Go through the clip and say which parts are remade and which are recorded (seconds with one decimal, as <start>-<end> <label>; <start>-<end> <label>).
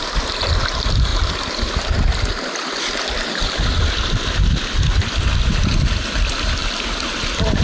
0.0-1.1 remade; 1.1-1.7 recorded; 1.7-6.6 remade; 6.6-7.6 recorded